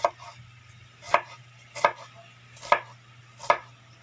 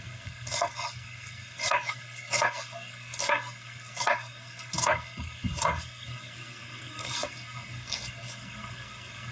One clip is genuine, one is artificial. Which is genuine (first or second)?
first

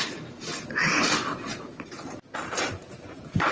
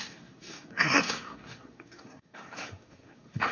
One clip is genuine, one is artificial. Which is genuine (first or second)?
first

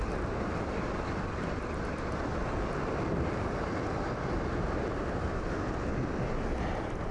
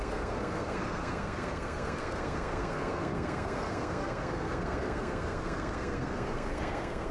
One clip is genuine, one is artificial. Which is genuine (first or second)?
first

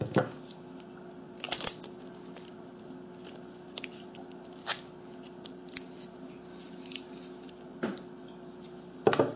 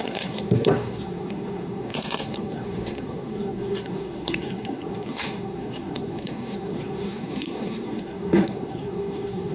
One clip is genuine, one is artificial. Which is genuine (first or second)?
first